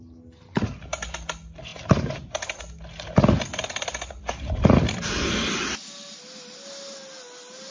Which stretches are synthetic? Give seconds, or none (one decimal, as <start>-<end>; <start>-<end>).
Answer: none